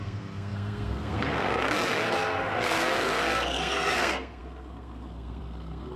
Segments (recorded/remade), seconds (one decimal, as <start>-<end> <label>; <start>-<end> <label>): 0.0-6.0 remade